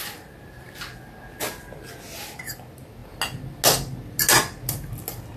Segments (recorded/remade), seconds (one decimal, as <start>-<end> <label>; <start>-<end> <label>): 0.0-5.4 recorded